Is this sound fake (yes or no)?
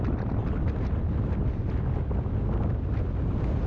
no